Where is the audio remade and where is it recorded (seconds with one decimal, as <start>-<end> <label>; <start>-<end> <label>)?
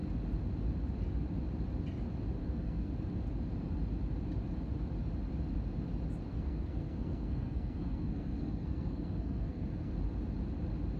0.0-2.4 recorded; 2.4-2.9 remade; 2.9-6.3 recorded; 6.3-9.9 remade; 9.9-11.0 recorded